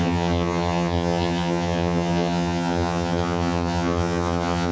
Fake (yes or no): yes